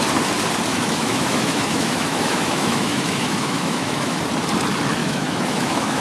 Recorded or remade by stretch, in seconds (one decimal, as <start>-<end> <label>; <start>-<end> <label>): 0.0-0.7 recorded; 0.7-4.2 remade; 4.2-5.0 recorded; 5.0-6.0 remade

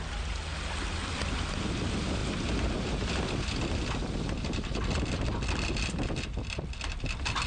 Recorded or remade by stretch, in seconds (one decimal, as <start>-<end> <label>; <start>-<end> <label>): 0.0-7.5 recorded

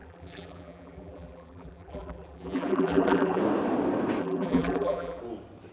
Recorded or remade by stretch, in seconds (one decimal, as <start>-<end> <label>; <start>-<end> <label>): 0.0-3.4 remade; 3.4-4.2 recorded; 4.2-5.2 remade; 5.2-5.7 recorded

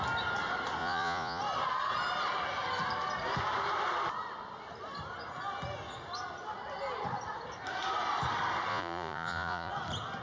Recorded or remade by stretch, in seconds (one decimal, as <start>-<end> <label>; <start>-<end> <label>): 0.0-0.8 recorded; 0.8-1.4 remade; 1.4-8.7 recorded; 8.7-9.7 remade; 9.7-10.2 recorded

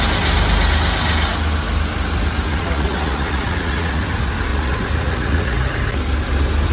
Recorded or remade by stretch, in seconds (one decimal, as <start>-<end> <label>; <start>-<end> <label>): 0.0-2.5 recorded; 2.5-4.0 remade; 4.0-4.5 recorded; 4.5-5.7 remade; 5.7-6.7 recorded

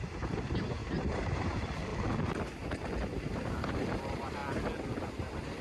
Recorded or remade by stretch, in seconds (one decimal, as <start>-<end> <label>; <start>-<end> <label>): 0.0-1.9 remade; 1.9-3.1 recorded; 3.1-4.4 remade; 4.4-5.0 recorded; 5.0-5.6 remade

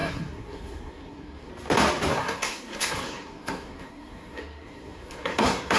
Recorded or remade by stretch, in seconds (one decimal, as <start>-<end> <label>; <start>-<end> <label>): 0.0-1.5 remade; 1.5-2.1 recorded; 2.1-5.8 remade